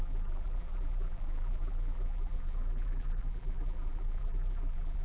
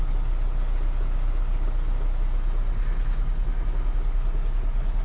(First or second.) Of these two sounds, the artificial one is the first